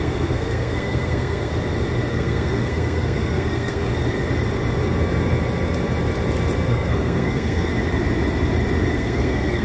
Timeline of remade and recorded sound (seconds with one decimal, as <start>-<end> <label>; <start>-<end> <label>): 0.0-1.5 remade; 1.5-2.1 recorded; 2.1-3.9 remade; 3.9-6.7 recorded; 6.7-7.7 remade; 7.7-8.9 recorded; 8.9-9.6 remade